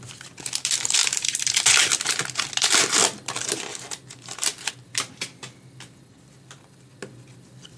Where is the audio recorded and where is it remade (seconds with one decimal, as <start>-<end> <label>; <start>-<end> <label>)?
0.0-7.8 recorded